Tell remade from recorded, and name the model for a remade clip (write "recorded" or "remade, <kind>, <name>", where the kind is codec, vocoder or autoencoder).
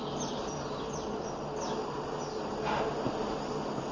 recorded